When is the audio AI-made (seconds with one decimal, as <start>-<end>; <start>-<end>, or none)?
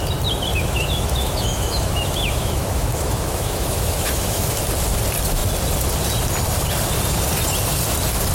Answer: 0.5-4.6